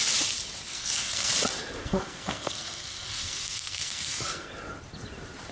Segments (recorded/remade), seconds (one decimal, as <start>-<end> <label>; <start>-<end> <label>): 0.0-0.7 recorded; 0.7-1.3 remade; 1.3-1.8 recorded; 1.8-4.5 remade; 4.5-5.5 recorded